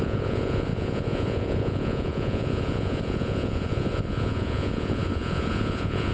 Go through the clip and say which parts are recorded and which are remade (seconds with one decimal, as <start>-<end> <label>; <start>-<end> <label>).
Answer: 0.0-6.1 remade